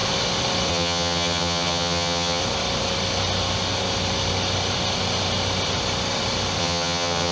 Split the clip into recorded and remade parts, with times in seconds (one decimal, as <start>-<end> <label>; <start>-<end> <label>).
0.0-0.7 recorded; 0.7-2.4 remade; 2.4-6.6 recorded; 6.6-7.3 remade

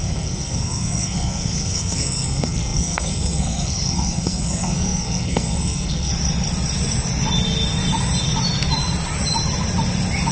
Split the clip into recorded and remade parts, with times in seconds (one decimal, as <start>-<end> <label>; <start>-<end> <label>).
0.0-6.1 remade; 6.1-10.3 recorded